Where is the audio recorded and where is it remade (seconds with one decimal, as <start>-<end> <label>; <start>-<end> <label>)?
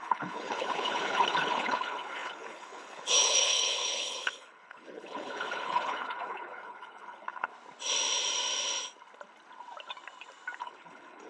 0.0-7.5 remade; 7.5-10.6 recorded; 10.6-11.3 remade